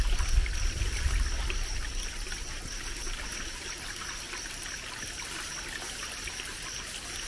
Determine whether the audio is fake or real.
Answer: real